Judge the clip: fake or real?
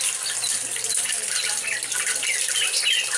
real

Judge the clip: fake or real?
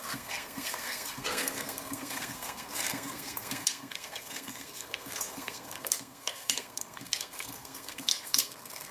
fake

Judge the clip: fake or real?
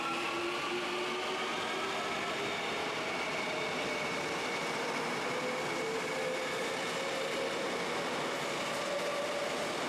real